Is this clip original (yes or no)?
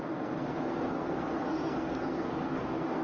no